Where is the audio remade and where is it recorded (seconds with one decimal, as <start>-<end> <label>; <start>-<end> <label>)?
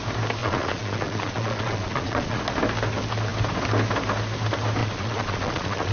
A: 0.0-0.4 recorded; 0.4-2.4 remade; 2.4-4.8 recorded; 4.8-5.9 remade